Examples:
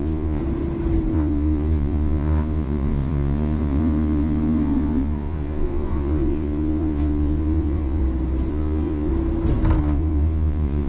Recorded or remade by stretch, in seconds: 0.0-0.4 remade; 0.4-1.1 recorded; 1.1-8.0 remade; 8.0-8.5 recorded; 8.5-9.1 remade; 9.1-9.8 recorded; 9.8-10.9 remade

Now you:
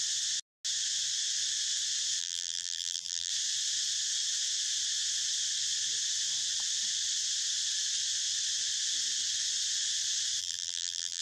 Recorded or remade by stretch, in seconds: 0.0-2.2 recorded; 2.2-3.3 remade; 3.3-10.4 recorded; 10.4-11.2 remade

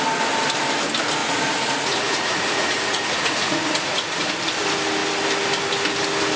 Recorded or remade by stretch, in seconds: 0.0-1.2 recorded; 1.2-4.3 remade; 4.3-6.4 recorded